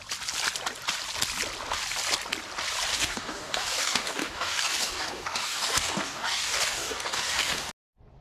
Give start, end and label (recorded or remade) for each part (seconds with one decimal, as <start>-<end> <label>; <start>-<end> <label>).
0.0-2.9 recorded; 2.9-7.7 remade; 7.7-8.2 recorded